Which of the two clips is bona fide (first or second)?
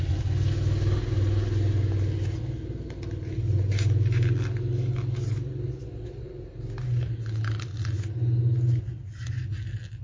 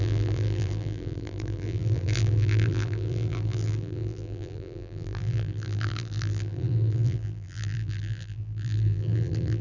first